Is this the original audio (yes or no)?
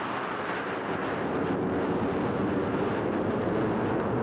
yes